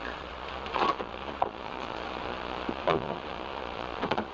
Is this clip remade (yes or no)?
yes